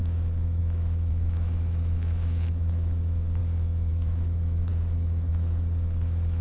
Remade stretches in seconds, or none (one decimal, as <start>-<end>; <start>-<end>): 0.0-3.4; 3.9-4.7; 5.3-6.4